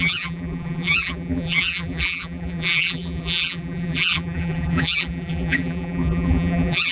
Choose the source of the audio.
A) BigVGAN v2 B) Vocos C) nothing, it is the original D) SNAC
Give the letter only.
A